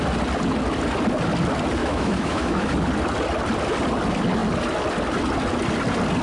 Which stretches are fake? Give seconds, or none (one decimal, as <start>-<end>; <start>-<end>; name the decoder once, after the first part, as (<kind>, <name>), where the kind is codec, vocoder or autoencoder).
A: 1.8-2.7 (autoencoder, DAC-VAE)